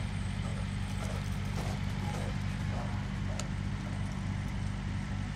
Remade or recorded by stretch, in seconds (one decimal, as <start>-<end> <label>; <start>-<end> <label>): 0.0-5.4 recorded